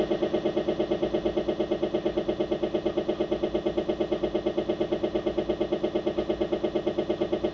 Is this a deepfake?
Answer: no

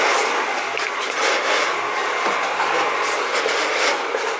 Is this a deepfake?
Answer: no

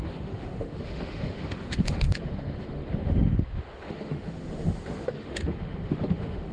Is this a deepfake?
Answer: yes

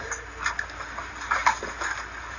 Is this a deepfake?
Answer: no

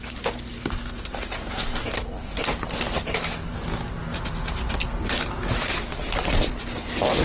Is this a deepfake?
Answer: no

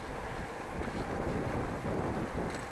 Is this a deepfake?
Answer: no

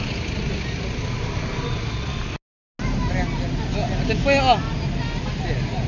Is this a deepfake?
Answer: no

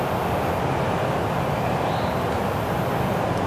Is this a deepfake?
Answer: no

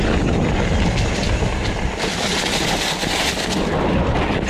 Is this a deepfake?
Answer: no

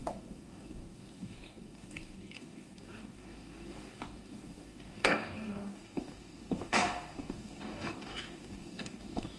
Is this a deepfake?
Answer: yes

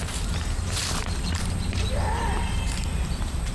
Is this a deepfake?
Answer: yes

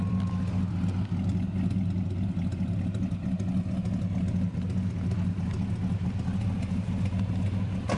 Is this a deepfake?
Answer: no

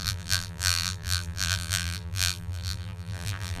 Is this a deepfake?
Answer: yes